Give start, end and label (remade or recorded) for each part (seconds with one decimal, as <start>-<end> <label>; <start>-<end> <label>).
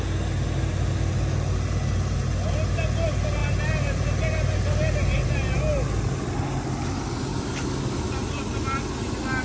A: 0.0-7.3 recorded; 7.3-8.0 remade; 8.0-9.4 recorded